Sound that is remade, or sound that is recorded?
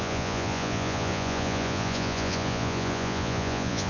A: remade